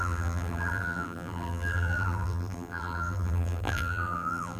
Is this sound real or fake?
fake